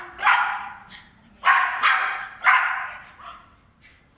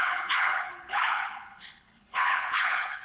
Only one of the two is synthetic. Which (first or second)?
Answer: second